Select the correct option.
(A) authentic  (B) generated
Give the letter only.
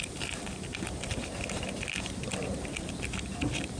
A